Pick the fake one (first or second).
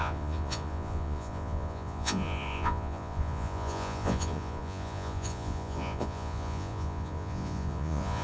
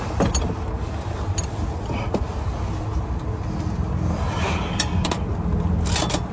first